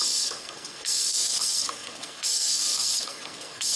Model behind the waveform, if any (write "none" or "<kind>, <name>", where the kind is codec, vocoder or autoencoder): codec, SNAC